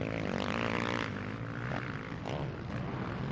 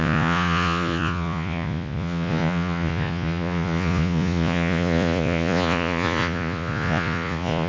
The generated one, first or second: second